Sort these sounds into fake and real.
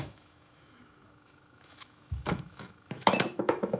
fake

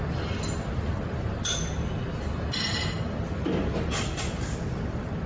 real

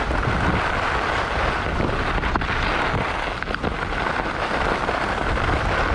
real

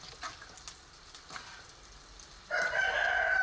real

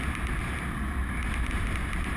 real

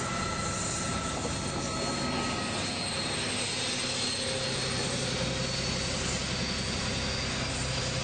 real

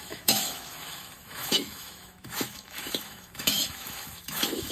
fake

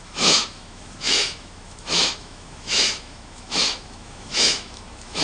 fake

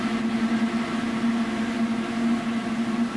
real